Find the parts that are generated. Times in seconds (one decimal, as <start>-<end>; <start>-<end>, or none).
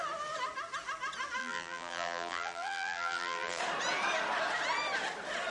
1.4-3.6